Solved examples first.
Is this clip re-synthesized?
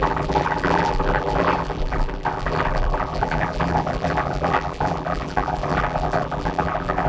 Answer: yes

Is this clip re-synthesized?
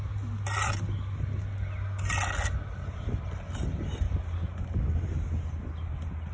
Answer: no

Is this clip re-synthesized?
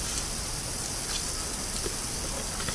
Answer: no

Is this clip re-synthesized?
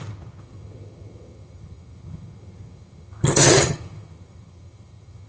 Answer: yes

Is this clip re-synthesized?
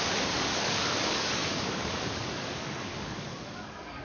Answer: yes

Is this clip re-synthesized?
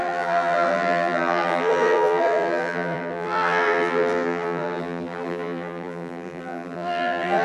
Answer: yes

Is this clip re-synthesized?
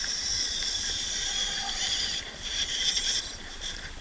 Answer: yes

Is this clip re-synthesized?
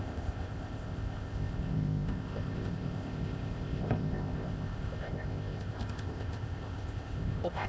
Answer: yes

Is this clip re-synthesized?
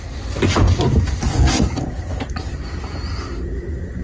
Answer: no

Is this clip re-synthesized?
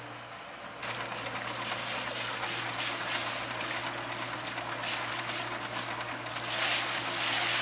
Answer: no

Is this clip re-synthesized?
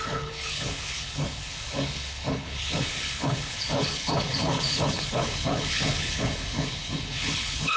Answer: yes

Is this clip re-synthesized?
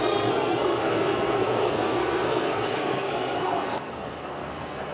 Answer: yes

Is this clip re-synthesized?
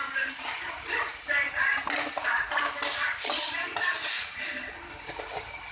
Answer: no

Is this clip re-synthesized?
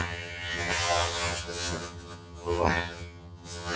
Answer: yes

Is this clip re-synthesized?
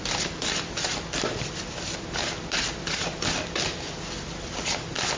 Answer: no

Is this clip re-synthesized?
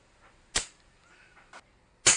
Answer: no